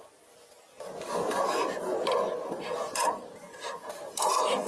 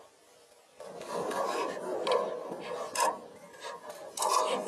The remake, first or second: first